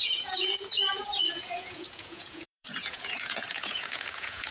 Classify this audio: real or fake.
fake